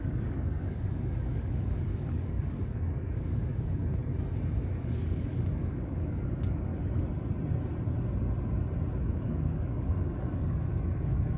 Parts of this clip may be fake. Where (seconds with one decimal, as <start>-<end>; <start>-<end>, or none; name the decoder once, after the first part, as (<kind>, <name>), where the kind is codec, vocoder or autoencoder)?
0.0-3.8 (codec, DAC); 4.7-6.7; 9.0-11.4